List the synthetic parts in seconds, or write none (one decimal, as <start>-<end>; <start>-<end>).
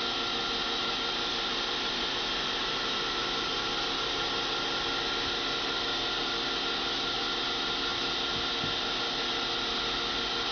0.6-4.3